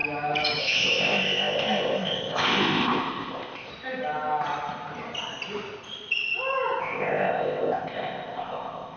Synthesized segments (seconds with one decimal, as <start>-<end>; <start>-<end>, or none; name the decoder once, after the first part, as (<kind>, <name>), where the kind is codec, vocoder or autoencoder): 0.6-3.7 (codec, ZipCodec); 6.8-9.0